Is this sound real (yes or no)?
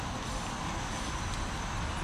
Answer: yes